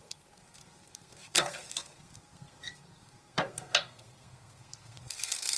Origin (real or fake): fake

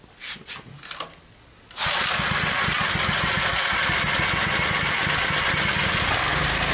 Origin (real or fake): real